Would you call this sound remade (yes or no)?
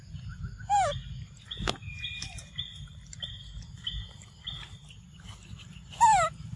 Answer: no